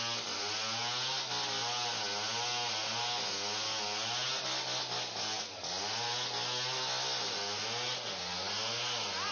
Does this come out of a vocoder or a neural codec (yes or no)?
no